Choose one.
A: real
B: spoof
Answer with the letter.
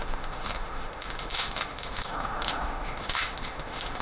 B